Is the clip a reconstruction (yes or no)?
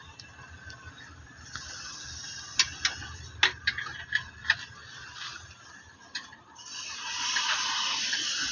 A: no